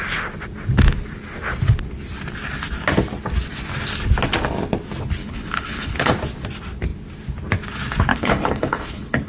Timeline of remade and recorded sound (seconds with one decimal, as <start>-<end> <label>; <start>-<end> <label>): 0.0-5.2 recorded; 5.2-6.1 remade; 6.1-8.1 recorded; 8.1-9.3 remade